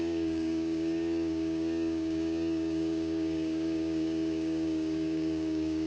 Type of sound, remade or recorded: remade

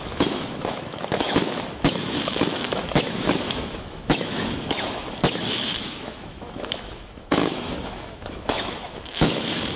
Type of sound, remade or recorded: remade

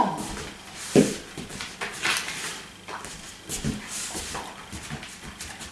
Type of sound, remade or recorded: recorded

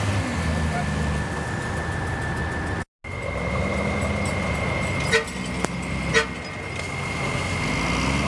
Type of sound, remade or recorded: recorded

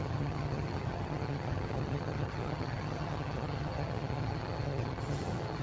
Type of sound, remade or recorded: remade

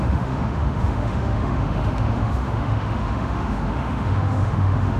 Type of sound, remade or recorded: remade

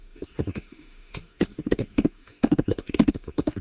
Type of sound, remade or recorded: remade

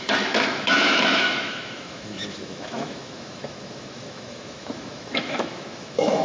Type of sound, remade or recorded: remade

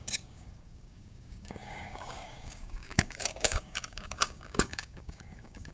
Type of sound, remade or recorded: remade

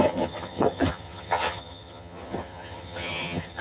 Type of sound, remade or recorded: remade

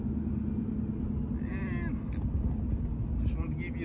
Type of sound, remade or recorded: recorded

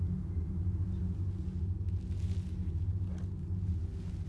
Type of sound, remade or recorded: recorded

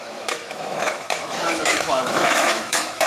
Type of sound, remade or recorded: remade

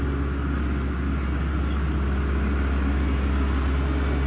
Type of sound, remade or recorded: recorded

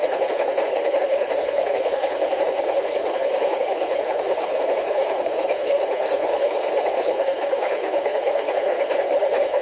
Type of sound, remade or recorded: remade